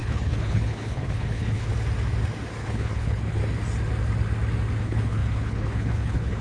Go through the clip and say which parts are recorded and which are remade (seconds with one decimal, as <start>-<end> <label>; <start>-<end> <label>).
0.0-1.7 remade; 1.7-2.6 recorded; 2.6-3.4 remade; 3.4-4.8 recorded; 4.8-6.4 remade